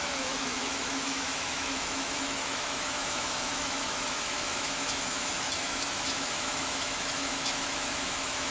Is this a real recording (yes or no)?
no